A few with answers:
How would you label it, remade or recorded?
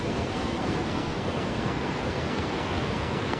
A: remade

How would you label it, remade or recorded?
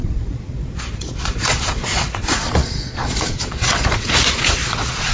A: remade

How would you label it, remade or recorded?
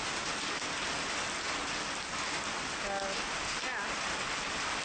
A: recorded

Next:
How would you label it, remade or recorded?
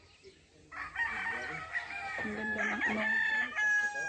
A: recorded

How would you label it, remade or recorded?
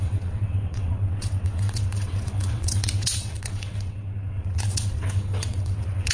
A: remade